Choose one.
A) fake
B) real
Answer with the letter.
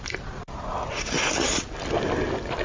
B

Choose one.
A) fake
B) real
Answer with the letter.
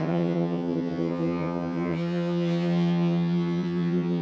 A